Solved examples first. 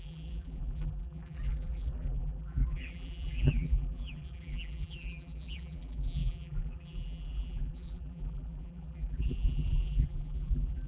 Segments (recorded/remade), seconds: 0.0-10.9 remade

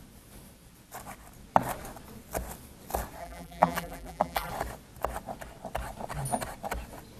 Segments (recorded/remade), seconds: 0.0-3.2 recorded; 3.2-4.5 remade; 4.5-7.2 recorded

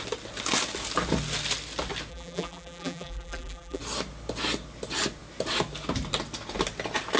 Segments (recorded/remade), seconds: 0.0-2.1 recorded; 2.1-3.8 remade; 3.8-7.2 recorded